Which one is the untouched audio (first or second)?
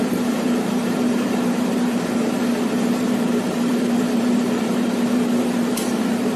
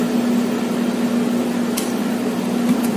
second